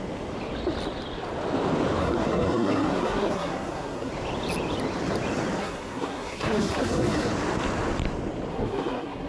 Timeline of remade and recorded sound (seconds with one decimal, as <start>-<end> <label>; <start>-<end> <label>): 0.0-2.0 recorded; 2.0-4.1 remade; 4.1-5.6 recorded; 5.6-7.3 remade; 7.3-8.5 recorded; 8.5-9.3 remade